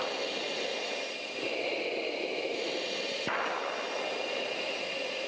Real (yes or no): yes